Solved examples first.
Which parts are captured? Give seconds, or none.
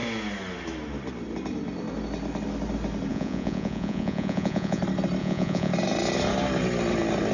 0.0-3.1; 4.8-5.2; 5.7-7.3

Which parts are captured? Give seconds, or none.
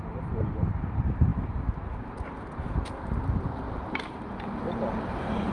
none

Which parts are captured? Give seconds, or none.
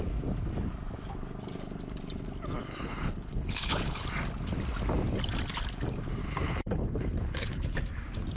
0.0-2.6; 4.1-6.2; 7.8-8.4